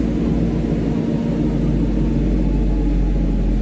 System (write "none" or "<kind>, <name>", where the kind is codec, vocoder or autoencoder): none